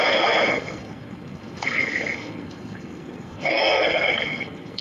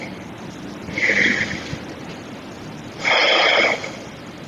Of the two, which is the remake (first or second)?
first